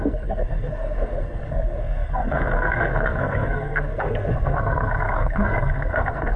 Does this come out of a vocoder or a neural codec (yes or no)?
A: yes